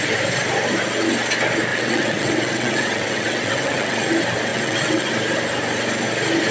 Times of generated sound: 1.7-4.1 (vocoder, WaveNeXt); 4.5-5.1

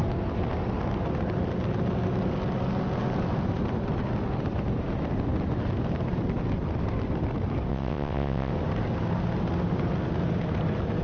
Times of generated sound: 7.7-8.5 (vocoder, WaveNeXt)

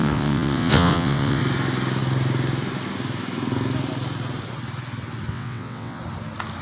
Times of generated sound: 0.0-1.4 (vocoder, WaveNeXt); 5.3-6.0

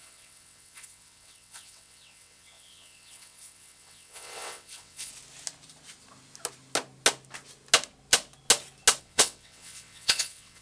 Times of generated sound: 0.0-5.1 (vocoder, WaveNeXt); 9.0-10.6

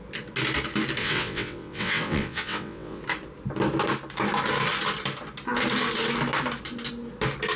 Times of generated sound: 1.0-3.0 (vocoder, WaveNeXt)

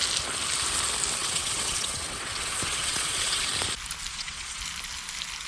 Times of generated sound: 1.2-3.5 (vocoder, WaveNeXt); 4.1-4.6